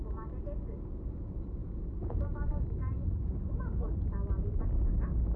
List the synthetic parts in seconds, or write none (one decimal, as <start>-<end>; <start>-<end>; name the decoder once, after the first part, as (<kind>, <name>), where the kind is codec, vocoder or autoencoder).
1.6-3.2 (vocoder, BigVGAN v2)